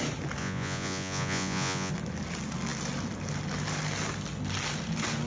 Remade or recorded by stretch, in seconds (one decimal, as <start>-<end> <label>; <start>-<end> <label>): 0.0-0.4 recorded; 0.4-1.9 remade; 1.9-5.3 recorded